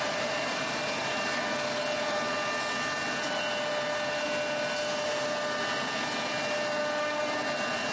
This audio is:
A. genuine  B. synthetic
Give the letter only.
A